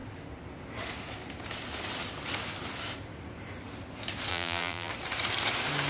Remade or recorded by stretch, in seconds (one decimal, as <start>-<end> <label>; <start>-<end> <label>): 0.0-4.3 recorded; 4.3-4.9 remade; 4.9-5.9 recorded